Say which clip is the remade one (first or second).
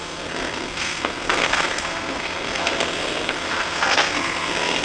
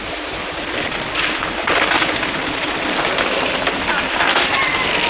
first